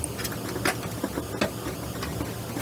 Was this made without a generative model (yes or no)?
yes